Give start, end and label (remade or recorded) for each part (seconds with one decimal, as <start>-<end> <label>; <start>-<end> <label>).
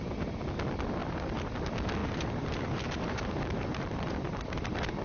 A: 0.0-1.0 recorded; 1.0-1.6 remade; 1.6-2.0 recorded; 2.0-4.6 remade; 4.6-5.0 recorded